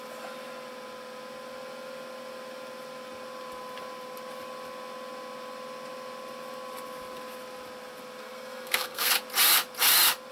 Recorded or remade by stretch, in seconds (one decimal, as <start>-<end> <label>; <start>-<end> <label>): 0.0-8.2 recorded; 8.2-9.1 remade; 9.1-10.3 recorded